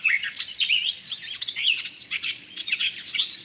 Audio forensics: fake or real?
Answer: fake